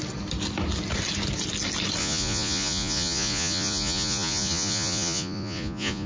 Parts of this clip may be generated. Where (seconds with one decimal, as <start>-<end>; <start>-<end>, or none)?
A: 2.0-6.1